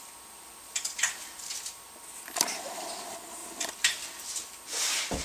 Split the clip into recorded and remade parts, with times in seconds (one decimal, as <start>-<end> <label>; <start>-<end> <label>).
0.0-3.4 recorded; 3.4-4.3 remade; 4.3-5.2 recorded